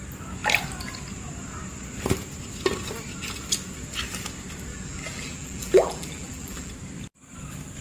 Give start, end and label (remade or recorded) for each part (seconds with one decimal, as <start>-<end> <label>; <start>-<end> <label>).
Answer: 0.0-4.7 recorded; 4.7-6.7 remade; 6.7-7.8 recorded